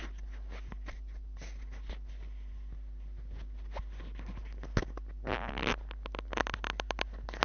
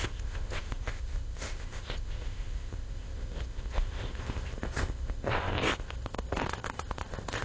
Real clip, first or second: first